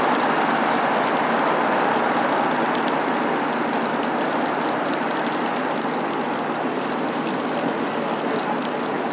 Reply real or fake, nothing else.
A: real